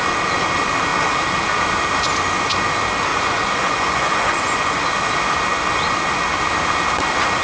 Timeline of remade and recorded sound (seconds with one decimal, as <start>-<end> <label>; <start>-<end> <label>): 0.0-3.1 recorded; 3.1-4.8 remade; 4.8-7.4 recorded